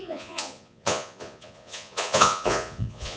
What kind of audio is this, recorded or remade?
remade